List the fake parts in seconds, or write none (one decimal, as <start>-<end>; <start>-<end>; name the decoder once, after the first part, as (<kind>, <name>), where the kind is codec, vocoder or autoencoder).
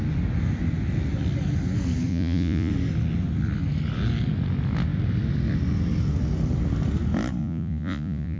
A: 2.1-2.7 (vocoder, Vocos); 7.4-8.4